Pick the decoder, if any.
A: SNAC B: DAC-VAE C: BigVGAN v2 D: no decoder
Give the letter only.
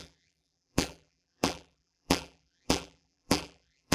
C